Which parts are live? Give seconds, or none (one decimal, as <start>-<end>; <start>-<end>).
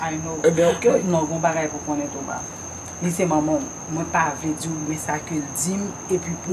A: 0.0-6.5